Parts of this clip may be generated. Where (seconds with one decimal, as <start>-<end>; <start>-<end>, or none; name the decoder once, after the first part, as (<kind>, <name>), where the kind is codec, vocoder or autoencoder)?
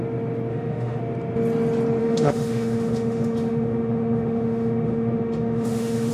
0.5-1.0 (autoencoder, DAC-VAE); 2.0-6.1